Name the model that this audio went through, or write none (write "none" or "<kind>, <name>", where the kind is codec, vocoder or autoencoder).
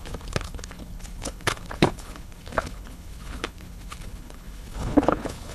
codec, HILCodec